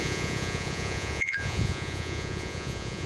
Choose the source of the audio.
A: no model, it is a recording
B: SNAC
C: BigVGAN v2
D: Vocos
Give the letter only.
D